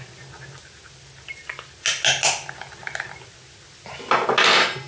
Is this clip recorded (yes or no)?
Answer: yes